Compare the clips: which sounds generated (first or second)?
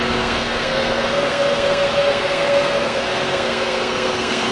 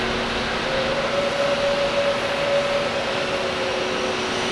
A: first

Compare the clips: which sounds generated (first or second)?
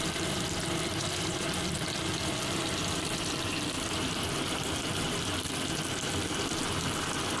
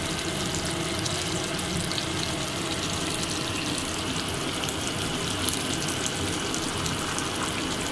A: first